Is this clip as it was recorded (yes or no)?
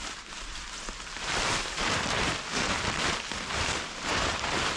yes